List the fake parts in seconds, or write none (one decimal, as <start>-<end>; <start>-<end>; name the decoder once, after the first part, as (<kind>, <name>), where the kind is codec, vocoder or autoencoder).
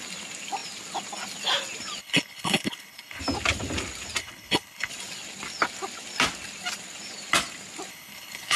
2.0-3.2 (codec, HILCodec); 4.2-4.9; 7.9-8.6